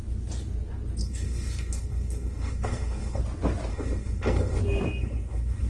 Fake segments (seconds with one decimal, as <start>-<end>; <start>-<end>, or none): 1.0-3.2; 3.7-4.6; 5.0-5.7